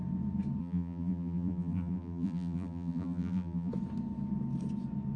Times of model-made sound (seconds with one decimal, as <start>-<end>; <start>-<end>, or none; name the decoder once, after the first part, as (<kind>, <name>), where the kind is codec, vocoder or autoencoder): 0.6-3.7 (vocoder, BigVGAN v2)